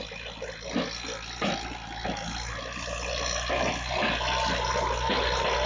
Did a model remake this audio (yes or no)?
no